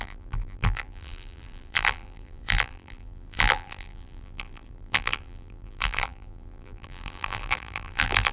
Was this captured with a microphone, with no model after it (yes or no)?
no